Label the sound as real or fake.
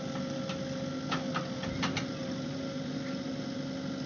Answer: real